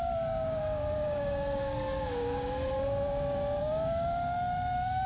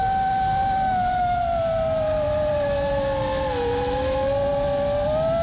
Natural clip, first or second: second